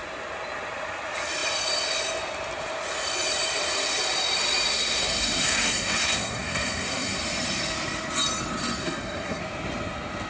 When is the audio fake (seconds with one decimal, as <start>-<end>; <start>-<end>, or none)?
4.7-7.2; 8.8-9.4